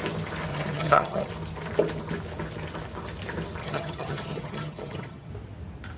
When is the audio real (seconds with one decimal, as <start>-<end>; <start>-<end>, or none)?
0.0-0.5; 1.3-3.6; 5.3-6.0